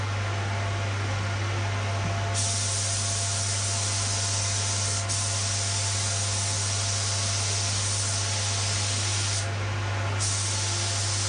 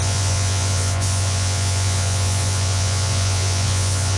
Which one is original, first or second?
first